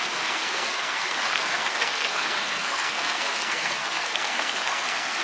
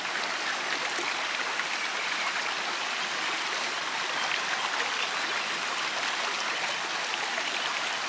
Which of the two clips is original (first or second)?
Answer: second